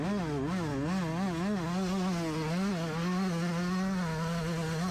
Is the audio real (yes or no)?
yes